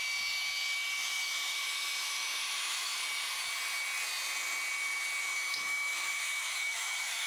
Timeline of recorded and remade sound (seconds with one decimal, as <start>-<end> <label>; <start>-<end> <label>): 0.0-1.1 recorded; 1.1-2.9 remade; 2.9-5.2 recorded; 5.2-7.3 remade